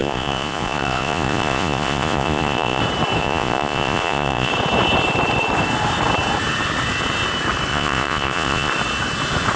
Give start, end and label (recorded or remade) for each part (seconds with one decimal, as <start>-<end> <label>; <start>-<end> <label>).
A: 0.0-2.8 remade; 2.8-3.2 recorded; 3.2-4.5 remade; 4.5-7.7 recorded; 7.7-8.7 remade; 8.7-9.6 recorded